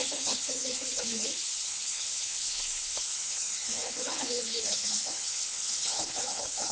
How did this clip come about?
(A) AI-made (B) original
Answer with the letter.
A